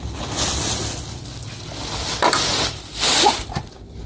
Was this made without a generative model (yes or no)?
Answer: yes